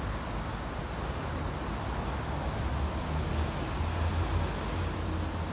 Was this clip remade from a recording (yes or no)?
no